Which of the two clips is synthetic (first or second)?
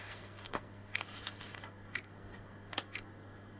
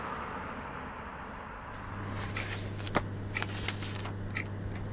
first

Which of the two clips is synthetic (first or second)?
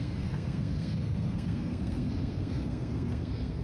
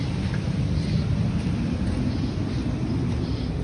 first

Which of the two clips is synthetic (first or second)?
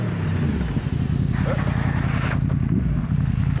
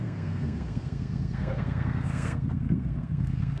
second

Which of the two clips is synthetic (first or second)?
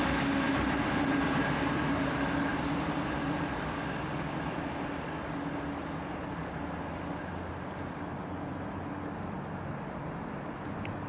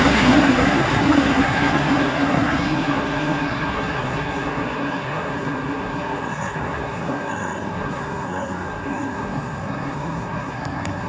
second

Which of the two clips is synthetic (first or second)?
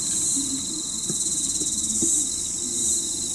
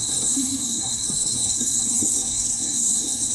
second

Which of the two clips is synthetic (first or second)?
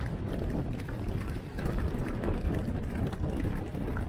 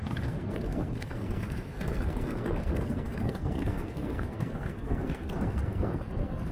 second